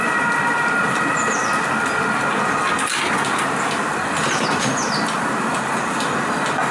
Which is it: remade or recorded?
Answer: recorded